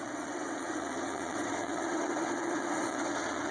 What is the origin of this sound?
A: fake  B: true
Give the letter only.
A